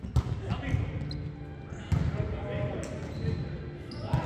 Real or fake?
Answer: real